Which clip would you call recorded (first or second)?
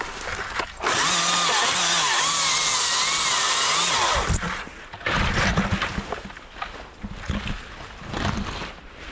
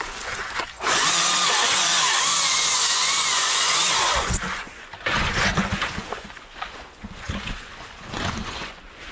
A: first